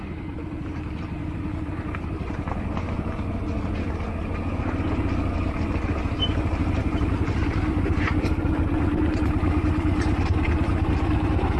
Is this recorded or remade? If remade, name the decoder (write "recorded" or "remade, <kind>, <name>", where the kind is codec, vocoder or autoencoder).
recorded